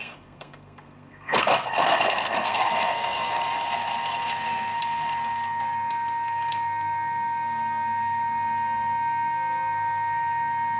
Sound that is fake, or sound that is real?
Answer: fake